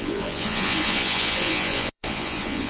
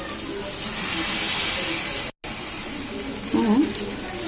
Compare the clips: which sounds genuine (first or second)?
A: second